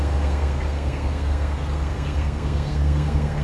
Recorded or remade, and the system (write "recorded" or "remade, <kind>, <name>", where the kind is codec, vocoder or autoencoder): remade, codec, SNAC